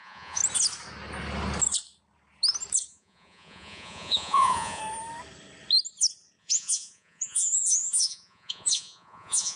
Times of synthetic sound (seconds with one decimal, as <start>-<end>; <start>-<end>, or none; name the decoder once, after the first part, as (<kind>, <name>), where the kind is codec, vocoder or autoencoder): 0.0-0.4 (vocoder, Vocos); 2.9-4.8; 6.4-9.6